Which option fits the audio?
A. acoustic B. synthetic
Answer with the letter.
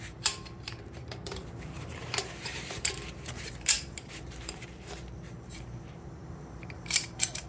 B